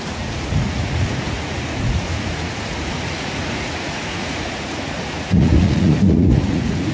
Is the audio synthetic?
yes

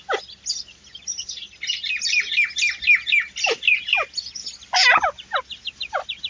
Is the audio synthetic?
no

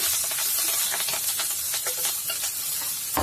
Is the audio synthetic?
no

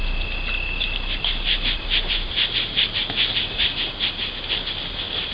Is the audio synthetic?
no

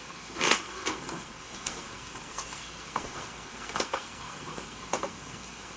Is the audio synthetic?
yes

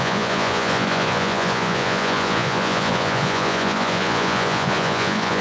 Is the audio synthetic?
yes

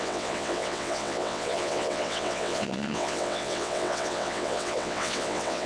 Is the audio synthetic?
yes